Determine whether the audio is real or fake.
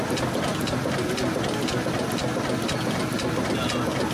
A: real